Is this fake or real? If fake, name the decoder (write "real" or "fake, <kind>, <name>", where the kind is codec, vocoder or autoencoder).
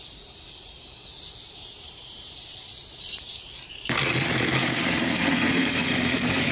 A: fake, vocoder, BigVGAN v2